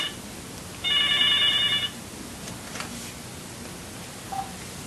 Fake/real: real